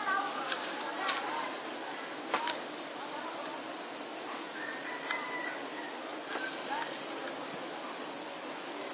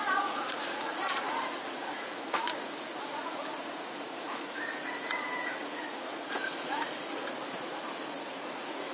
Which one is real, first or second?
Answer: first